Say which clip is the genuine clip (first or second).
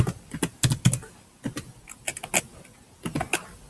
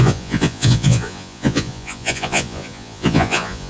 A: first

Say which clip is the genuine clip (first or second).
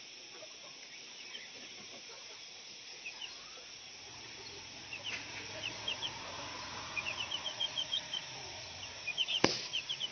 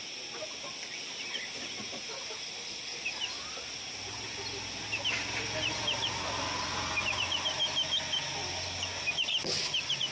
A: second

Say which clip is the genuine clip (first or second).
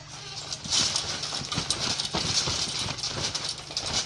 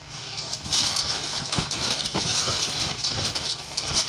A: first